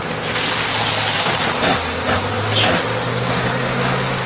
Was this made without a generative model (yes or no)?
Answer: yes